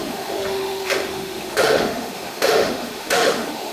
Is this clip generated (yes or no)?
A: yes